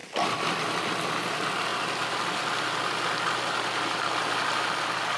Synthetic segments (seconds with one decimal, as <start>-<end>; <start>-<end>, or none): none